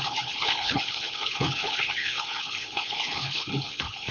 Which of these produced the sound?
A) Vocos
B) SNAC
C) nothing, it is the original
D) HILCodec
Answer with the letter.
D